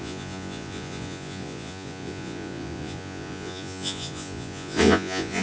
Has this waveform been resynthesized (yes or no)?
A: yes